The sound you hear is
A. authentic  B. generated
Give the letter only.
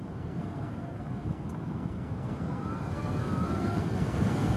B